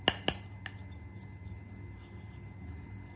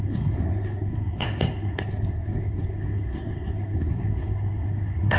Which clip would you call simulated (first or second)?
second